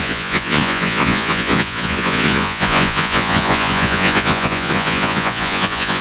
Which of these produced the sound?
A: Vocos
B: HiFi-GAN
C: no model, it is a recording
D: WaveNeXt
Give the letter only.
A